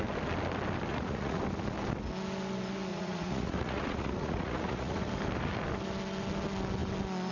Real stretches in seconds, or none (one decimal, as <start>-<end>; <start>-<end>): 0.0-0.9; 1.4-2.9; 5.1-7.3